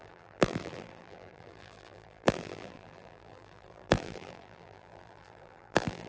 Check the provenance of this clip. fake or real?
fake